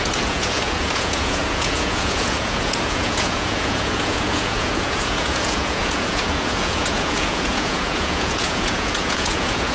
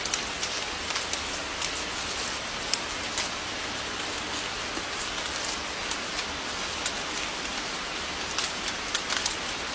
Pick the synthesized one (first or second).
first